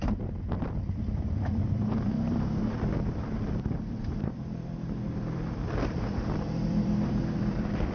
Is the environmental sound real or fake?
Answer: fake